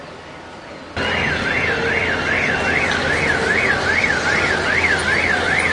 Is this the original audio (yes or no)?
yes